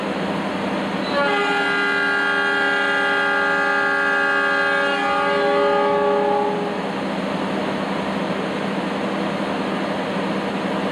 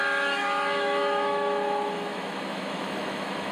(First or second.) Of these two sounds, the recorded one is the first